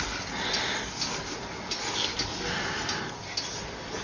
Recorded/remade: recorded